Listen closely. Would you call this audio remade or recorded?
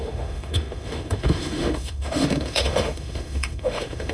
remade